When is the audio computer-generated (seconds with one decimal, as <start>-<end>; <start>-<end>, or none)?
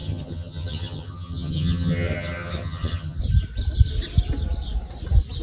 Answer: 0.0-3.2